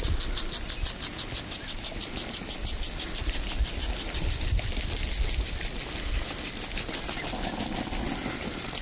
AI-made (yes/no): no